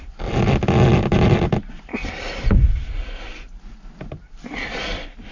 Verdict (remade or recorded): recorded